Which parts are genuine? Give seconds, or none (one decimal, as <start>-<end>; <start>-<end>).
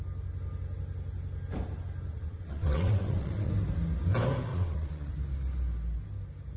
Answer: 0.0-2.1; 3.5-4.5; 5.1-6.6